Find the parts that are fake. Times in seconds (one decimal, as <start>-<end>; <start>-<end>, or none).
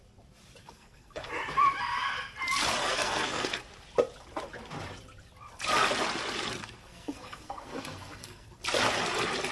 0.6-1.3; 2.8-3.6; 6.6-8.6